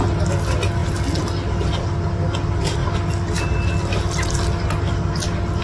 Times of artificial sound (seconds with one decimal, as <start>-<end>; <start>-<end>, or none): none